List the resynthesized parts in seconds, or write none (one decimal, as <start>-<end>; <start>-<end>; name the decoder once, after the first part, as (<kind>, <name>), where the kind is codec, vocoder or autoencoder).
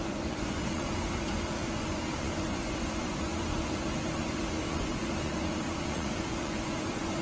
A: 0.0-7.2 (vocoder, Vocos)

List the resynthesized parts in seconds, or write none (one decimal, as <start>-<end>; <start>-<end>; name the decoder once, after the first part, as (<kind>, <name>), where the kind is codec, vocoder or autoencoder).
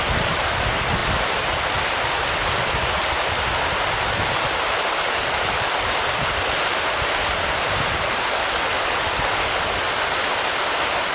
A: none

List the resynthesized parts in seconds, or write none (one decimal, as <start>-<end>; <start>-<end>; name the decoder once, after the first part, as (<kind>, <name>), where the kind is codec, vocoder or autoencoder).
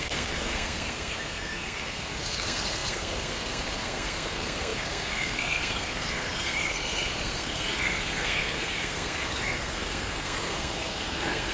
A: 0.0-11.5 (codec, SNAC)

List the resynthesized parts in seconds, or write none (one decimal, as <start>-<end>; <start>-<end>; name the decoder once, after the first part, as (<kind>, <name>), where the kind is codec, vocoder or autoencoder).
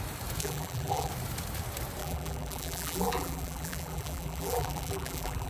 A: 0.4-1.1 (vocoder, BigVGAN v2); 2.0-5.5